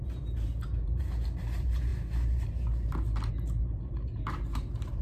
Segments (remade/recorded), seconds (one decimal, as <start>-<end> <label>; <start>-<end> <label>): 0.0-5.0 remade